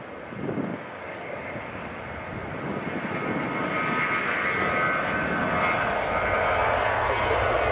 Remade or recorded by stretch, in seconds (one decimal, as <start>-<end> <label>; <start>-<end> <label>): 0.0-0.7 recorded; 0.7-2.0 remade; 2.0-7.7 recorded